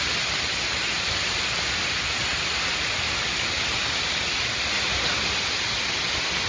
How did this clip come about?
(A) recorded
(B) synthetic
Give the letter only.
A